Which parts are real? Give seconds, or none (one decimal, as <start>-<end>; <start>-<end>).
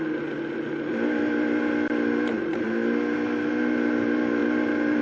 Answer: 0.0-5.0